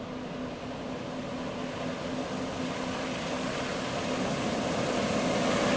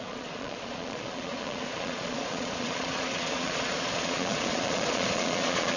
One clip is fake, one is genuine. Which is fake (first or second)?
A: second